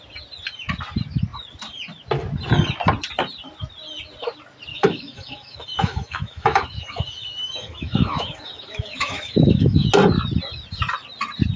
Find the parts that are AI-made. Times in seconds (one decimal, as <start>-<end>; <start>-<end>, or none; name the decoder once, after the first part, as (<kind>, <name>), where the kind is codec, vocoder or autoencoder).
4.7-9.9 (autoencoder, DAC-VAE)